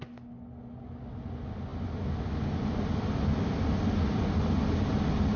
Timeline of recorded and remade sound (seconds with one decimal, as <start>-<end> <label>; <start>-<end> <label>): 0.0-5.4 recorded